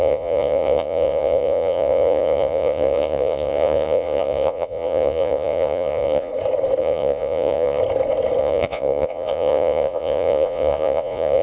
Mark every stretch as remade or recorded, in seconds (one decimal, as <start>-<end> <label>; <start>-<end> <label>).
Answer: 0.0-6.3 remade; 6.3-6.8 recorded; 6.8-7.8 remade; 7.8-8.4 recorded; 8.4-11.4 remade